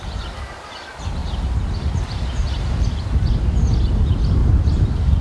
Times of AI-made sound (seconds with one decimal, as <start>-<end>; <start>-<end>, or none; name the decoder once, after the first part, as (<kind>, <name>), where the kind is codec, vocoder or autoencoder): 1.2-2.0 (vocoder, BigVGAN v2); 2.4-3.3